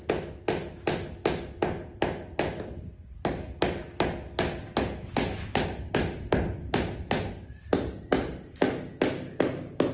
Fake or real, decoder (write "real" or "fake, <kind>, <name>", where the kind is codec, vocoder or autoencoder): real